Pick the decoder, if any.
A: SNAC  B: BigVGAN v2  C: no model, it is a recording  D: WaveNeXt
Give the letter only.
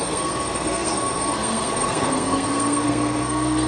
A